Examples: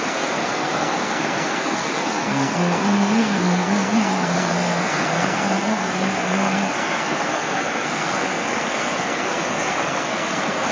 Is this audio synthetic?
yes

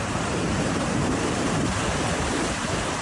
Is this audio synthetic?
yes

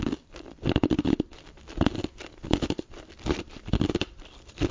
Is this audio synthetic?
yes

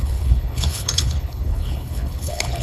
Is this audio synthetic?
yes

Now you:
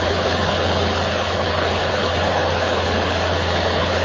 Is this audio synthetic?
yes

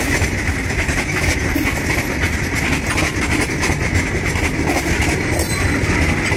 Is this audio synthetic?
no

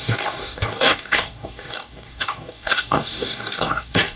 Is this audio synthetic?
yes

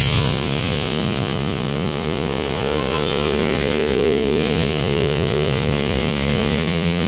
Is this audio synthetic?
yes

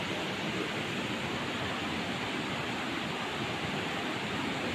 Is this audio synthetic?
yes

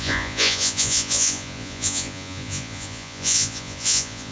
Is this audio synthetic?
yes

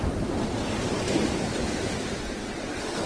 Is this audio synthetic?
no